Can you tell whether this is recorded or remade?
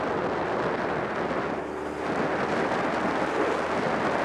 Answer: recorded